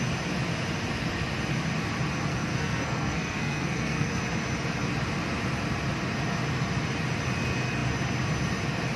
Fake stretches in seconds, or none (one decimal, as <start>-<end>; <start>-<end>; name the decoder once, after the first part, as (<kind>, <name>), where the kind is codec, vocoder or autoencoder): 2.3-4.2 (codec, SNAC)